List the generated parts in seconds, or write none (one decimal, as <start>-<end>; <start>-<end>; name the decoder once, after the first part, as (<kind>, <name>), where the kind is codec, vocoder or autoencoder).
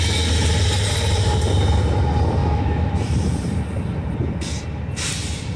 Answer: 2.4-2.9 (autoencoder, DAC-VAE)